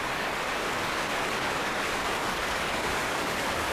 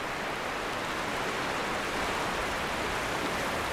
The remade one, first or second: first